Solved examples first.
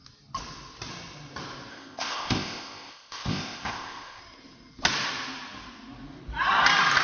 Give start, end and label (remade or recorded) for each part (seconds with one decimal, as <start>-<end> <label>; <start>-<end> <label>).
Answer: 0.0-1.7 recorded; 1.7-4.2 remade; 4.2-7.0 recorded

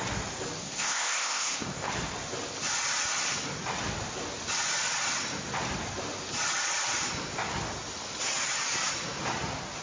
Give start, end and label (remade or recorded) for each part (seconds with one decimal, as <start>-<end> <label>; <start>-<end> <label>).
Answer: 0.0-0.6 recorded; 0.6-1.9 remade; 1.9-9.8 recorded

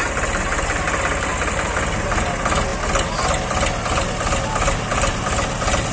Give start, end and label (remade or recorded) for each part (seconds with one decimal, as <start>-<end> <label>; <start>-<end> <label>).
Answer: 0.0-5.9 recorded